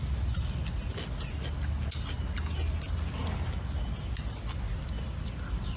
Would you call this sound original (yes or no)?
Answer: yes